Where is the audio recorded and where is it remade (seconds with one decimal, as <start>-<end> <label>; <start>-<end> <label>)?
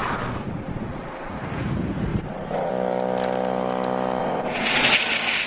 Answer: 0.0-1.3 remade; 1.3-2.1 recorded; 2.1-2.7 remade; 2.7-4.2 recorded; 4.2-5.0 remade; 5.0-5.5 recorded